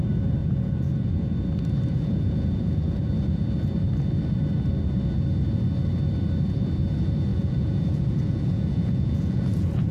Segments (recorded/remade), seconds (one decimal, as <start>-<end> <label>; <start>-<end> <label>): 0.0-0.4 recorded; 0.4-1.3 remade; 1.3-1.9 recorded; 1.9-3.1 remade; 3.1-7.3 recorded; 7.3-9.9 remade